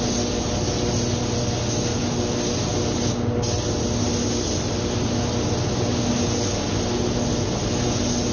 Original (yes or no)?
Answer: yes